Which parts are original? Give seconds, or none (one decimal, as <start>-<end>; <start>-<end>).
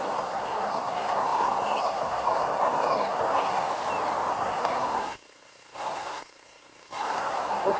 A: 3.7-4.3